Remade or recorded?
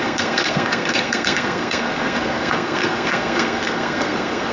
remade